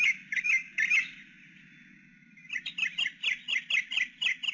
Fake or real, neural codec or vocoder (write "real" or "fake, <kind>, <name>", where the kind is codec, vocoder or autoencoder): real